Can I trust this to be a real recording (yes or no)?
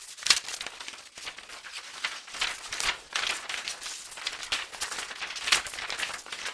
yes